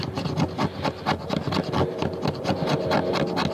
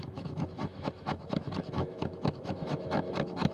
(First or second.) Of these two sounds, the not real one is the second